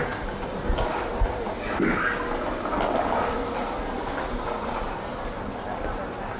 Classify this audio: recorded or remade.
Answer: recorded